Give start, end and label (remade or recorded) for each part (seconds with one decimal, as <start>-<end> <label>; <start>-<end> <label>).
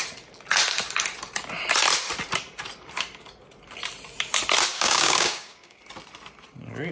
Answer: 0.0-4.7 recorded; 4.7-5.8 remade; 5.8-6.9 recorded